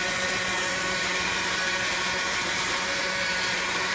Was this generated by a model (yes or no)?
yes